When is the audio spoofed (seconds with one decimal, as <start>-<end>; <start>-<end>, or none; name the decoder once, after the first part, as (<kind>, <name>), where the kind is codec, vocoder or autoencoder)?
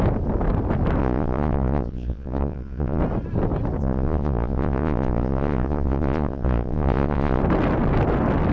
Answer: 1.0-3.0 (vocoder, Vocos); 3.8-7.4